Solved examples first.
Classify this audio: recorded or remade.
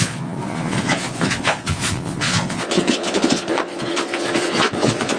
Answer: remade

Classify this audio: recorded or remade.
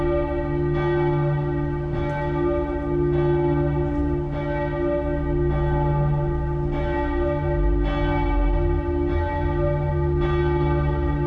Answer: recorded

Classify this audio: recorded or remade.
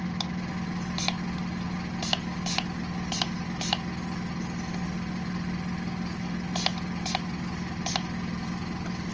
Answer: recorded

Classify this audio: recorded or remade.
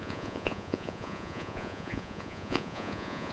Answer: remade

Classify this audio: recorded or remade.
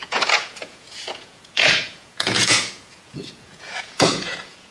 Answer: remade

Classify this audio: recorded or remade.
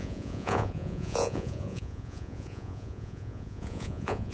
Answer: remade